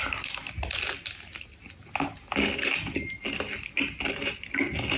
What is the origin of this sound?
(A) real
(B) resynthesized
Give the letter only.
A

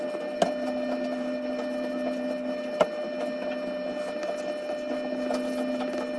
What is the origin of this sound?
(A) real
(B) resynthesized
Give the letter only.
A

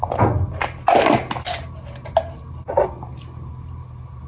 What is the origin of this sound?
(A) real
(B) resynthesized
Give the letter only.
A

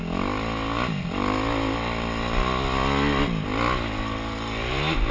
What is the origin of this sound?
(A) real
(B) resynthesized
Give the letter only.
A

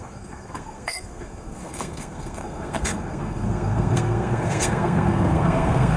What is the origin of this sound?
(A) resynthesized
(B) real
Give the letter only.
A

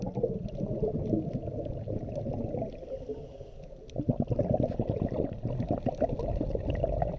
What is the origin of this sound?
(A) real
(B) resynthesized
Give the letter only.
A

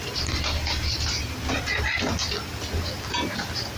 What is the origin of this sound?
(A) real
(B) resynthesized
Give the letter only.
A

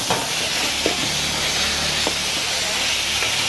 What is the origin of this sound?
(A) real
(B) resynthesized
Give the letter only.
A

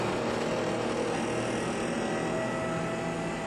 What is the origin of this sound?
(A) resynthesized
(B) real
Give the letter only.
B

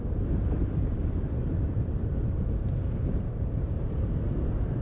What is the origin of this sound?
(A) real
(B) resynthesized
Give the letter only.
B